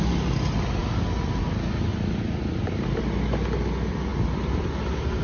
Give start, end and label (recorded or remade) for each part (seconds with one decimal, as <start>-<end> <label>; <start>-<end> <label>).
0.0-0.8 recorded; 0.8-1.4 remade; 1.4-1.9 recorded; 1.9-3.0 remade; 3.0-5.2 recorded